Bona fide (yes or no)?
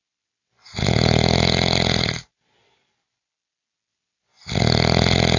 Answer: yes